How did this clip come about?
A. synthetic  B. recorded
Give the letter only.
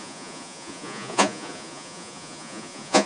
A